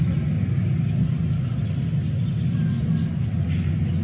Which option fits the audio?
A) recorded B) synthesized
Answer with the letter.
A